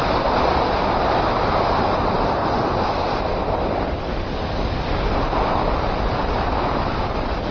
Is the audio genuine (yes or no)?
yes